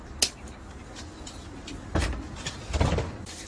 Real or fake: real